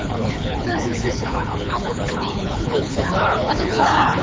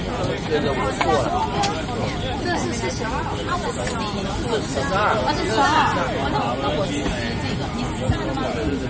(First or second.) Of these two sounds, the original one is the second